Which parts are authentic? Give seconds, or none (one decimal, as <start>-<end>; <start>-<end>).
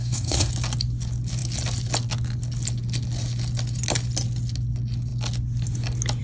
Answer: 0.5-6.2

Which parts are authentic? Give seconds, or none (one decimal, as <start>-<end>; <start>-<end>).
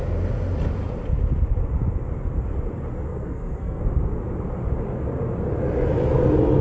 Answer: 0.0-3.1; 3.8-6.6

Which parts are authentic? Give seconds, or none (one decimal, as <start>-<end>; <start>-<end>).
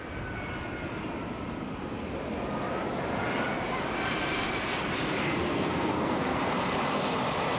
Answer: 0.0-5.4; 6.4-7.6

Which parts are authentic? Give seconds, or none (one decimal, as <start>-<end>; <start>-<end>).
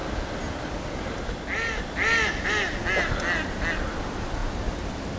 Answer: 0.0-5.2